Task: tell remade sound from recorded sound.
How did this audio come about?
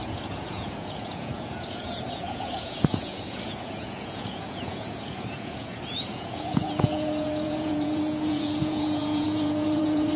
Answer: remade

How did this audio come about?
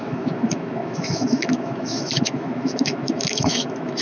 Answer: remade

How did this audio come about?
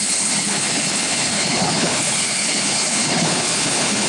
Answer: remade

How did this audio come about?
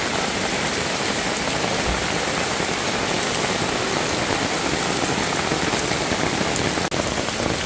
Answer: recorded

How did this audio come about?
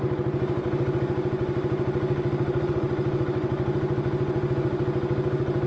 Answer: recorded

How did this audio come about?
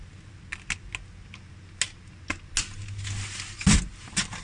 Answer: recorded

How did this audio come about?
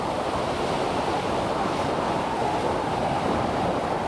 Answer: remade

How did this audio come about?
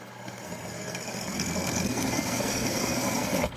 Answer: remade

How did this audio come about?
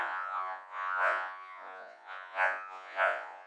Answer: remade